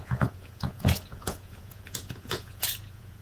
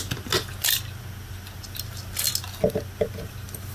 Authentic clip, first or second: second